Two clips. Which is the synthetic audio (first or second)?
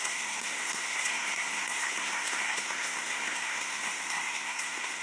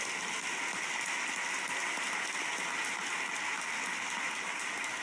first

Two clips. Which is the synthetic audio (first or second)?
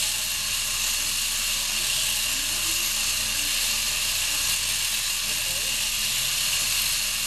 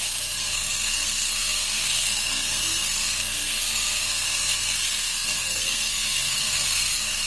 second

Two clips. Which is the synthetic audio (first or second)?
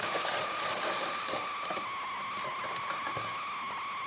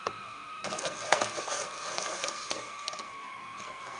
second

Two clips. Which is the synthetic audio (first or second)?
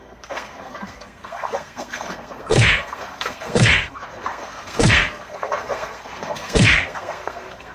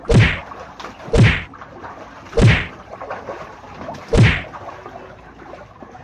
first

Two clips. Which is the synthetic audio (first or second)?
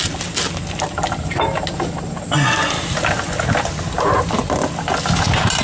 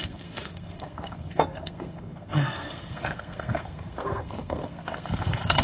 second